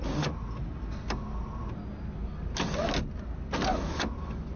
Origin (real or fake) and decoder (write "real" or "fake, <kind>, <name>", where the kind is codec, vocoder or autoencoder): real